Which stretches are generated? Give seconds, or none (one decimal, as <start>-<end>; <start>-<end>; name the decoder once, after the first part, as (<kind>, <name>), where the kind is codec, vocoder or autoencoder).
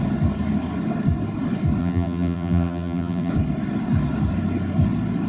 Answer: 1.8-3.3 (vocoder, BigVGAN v2)